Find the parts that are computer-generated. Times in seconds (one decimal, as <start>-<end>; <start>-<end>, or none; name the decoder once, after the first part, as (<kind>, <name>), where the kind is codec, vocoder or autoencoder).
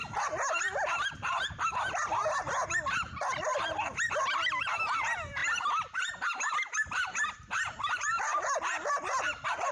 4.4-5.4 (vocoder, BigVGAN v2); 6.5-9.7